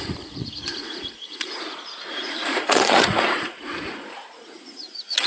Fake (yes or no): yes